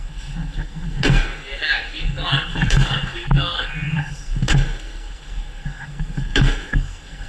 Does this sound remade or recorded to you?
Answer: remade